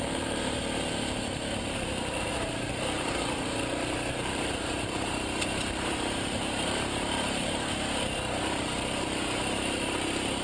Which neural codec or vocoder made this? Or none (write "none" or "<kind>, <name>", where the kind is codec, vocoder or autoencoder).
vocoder, BigVGAN v2